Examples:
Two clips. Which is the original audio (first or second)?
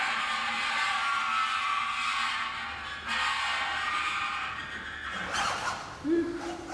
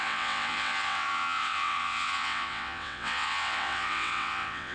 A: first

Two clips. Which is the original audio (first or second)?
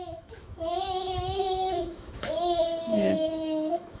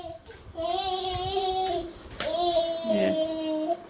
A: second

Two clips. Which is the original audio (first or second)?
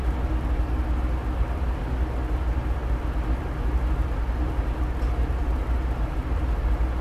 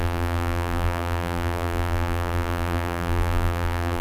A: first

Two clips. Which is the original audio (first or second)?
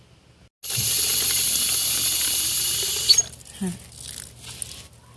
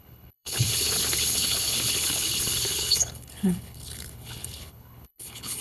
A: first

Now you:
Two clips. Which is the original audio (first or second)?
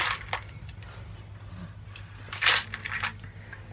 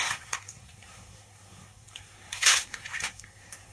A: first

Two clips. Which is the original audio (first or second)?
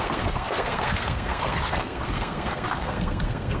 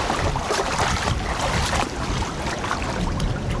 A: second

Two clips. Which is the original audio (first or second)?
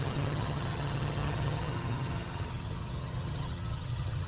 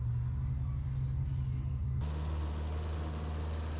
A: second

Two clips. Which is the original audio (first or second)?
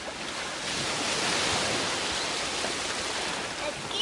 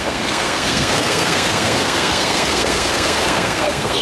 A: first